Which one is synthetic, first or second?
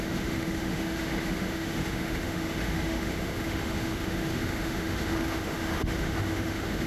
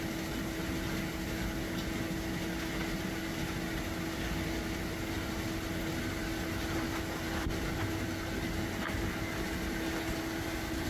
first